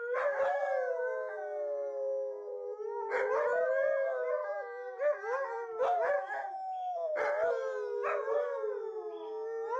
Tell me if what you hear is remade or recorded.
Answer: recorded